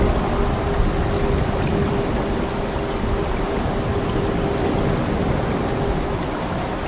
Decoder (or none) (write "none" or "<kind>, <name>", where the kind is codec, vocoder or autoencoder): none